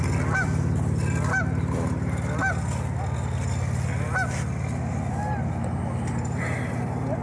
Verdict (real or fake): real